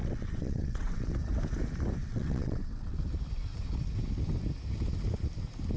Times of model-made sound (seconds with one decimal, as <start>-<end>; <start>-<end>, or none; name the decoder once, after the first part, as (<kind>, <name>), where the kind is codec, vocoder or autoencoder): 0.0-1.1 (vocoder, WaveNeXt); 2.0-3.0